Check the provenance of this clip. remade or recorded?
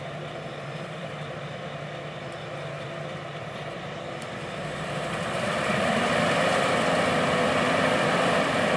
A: remade